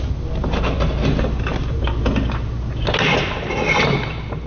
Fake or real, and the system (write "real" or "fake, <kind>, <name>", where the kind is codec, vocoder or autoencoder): real